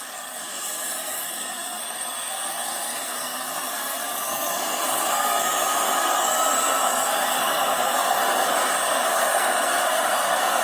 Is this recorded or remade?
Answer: remade